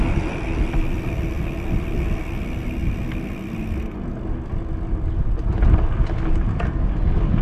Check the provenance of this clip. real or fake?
real